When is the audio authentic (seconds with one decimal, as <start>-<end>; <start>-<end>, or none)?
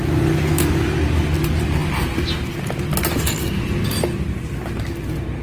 0.0-5.4